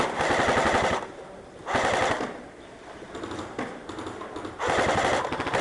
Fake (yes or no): no